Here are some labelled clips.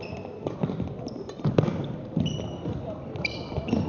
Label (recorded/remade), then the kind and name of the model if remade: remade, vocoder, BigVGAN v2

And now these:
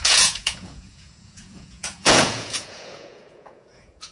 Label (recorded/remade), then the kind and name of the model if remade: remade, vocoder, Vocos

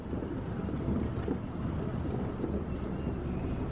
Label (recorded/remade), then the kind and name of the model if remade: recorded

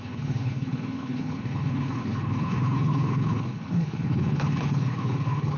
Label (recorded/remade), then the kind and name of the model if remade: remade, codec, HILCodec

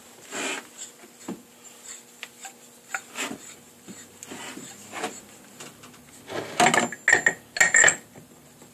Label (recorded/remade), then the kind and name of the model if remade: recorded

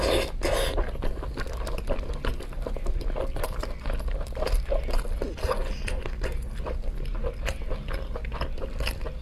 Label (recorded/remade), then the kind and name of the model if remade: recorded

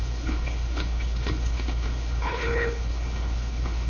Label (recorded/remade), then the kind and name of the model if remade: remade, codec, HILCodec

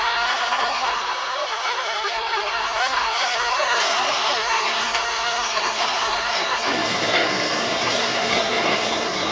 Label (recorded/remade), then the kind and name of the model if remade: remade, codec, SNAC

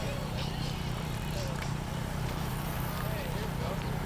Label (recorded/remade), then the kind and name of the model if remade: remade, vocoder, BigVGAN v2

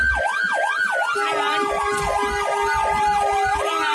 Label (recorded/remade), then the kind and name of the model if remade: recorded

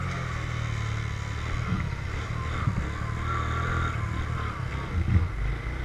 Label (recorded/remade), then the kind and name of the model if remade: recorded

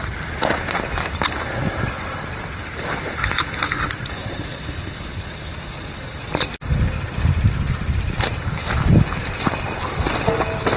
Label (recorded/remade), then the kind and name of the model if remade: recorded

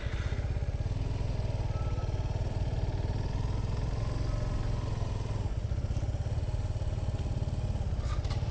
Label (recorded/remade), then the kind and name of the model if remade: recorded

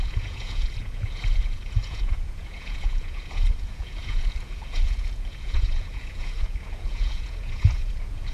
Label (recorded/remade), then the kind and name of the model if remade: remade, vocoder, Vocos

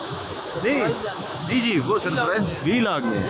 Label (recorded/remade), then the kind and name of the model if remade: remade, autoencoder, DAC-VAE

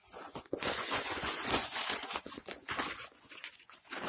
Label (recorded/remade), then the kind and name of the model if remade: remade, vocoder, Vocos